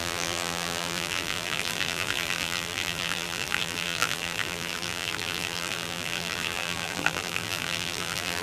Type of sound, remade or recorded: remade